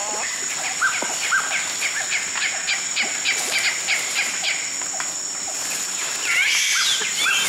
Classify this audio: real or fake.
real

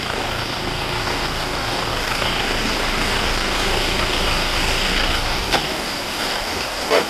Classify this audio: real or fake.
fake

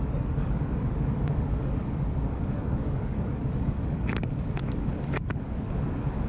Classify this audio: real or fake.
fake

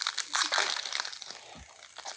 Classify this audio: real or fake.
real